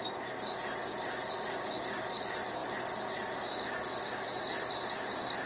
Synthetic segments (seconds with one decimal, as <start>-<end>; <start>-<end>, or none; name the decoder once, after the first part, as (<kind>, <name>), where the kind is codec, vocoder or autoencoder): none